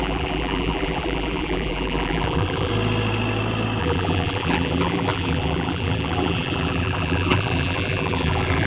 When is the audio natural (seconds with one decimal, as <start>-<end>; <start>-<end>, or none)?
2.7-3.8